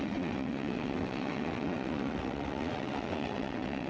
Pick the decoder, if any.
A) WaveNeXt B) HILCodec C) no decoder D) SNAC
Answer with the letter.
A